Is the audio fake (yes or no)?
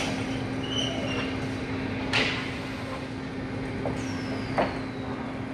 no